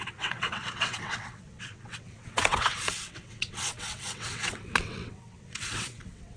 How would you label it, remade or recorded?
remade